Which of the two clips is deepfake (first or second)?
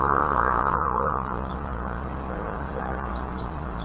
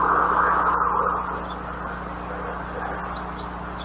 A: first